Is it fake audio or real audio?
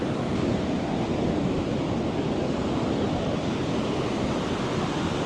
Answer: real